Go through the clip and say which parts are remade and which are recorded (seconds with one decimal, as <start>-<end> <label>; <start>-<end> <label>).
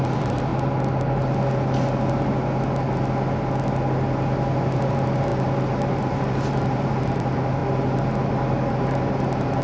0.0-0.5 remade; 0.5-4.8 recorded; 4.8-7.6 remade; 7.6-8.7 recorded; 8.7-9.6 remade